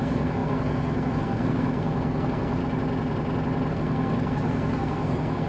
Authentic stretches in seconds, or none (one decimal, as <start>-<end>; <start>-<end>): 2.6-3.7